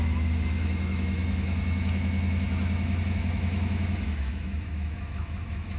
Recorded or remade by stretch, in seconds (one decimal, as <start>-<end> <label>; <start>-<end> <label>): 0.0-5.8 remade